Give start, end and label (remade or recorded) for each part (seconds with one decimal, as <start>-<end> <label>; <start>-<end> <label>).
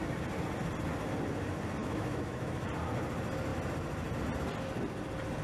0.0-1.8 recorded; 1.8-2.7 remade; 2.7-5.4 recorded